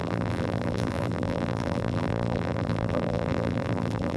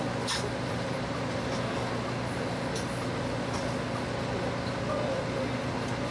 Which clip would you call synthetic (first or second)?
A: first